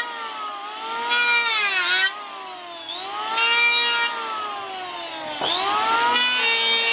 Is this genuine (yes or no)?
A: yes